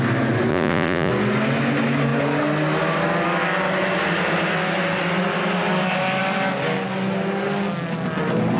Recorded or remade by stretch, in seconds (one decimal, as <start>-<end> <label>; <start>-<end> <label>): 0.0-0.5 recorded; 0.5-1.1 remade; 1.1-8.6 recorded